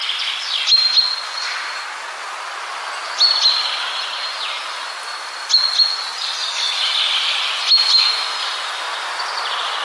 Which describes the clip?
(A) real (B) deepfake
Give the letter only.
A